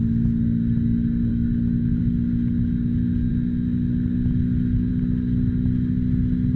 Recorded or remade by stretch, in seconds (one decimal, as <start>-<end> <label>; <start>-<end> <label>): 0.0-1.3 recorded; 1.3-2.0 remade; 2.0-6.6 recorded